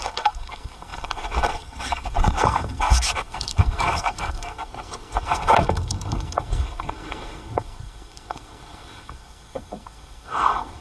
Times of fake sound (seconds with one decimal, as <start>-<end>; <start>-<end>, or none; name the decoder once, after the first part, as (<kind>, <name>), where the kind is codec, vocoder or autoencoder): 0.0-10.8 (codec, SNAC)